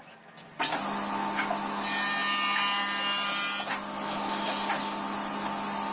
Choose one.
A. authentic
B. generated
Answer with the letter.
A